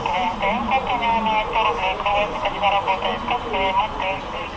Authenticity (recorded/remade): recorded